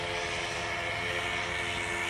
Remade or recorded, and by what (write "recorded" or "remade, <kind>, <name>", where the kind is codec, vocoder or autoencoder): recorded